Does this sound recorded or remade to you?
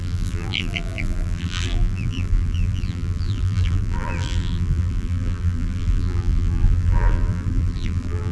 remade